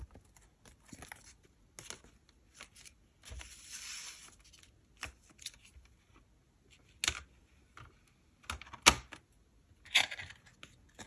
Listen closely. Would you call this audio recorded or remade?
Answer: recorded